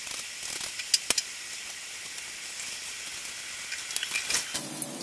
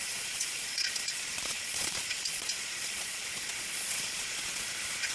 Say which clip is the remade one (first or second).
second